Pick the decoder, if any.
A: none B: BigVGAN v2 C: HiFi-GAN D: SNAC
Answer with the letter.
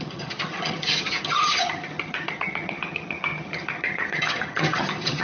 C